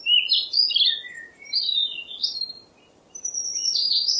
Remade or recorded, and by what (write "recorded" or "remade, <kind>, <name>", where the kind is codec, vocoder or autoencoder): remade, vocoder, BigVGAN v2